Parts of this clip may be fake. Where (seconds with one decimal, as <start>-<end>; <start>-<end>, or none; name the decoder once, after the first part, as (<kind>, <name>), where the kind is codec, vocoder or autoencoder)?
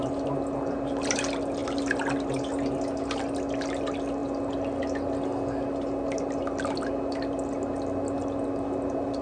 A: none